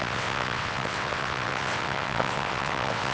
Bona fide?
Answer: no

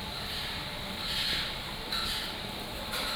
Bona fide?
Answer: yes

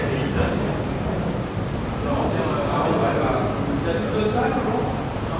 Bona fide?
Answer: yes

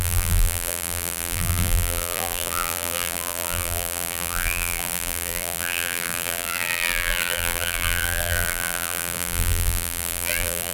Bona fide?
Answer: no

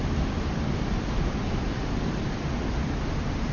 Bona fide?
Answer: yes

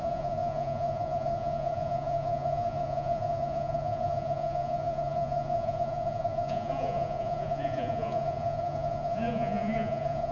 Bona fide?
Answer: no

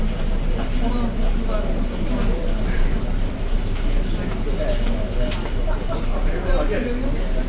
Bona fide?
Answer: yes